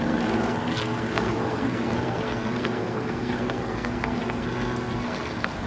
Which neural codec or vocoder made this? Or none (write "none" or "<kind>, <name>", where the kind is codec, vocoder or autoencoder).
codec, SNAC